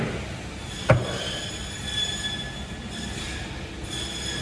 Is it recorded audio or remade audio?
recorded